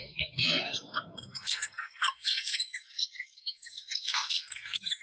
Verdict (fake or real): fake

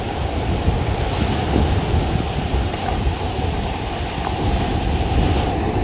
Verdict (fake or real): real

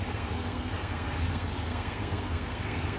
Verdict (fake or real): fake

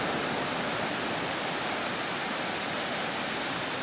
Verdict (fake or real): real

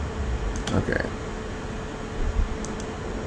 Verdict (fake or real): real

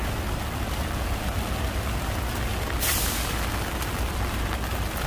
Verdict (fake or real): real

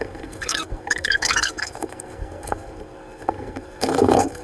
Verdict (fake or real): fake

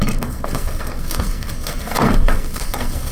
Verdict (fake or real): fake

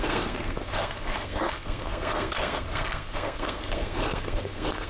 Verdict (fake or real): fake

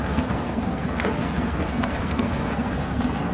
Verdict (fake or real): fake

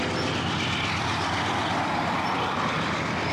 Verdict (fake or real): real